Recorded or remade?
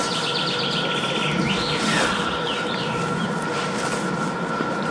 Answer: recorded